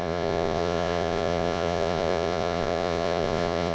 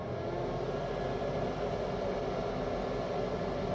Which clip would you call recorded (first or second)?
second